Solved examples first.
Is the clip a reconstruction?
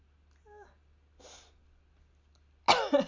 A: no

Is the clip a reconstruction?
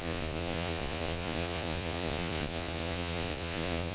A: yes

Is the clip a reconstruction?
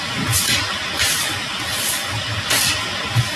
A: no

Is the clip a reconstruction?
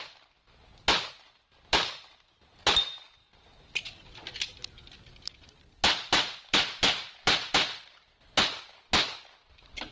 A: no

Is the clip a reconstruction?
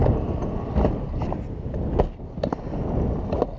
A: no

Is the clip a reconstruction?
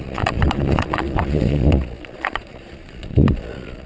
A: yes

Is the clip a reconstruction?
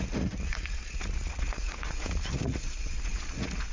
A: yes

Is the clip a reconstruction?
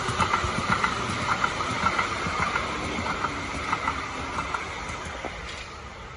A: no